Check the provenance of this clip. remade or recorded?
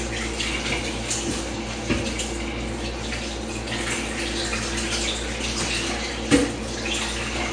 recorded